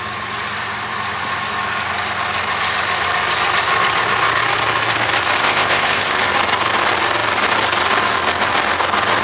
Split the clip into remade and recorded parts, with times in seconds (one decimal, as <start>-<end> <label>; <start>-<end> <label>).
0.0-5.4 recorded; 5.4-6.2 remade; 6.2-9.2 recorded